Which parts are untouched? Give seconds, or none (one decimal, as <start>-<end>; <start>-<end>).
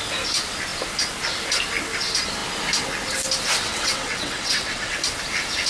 0.0-3.7; 5.0-5.7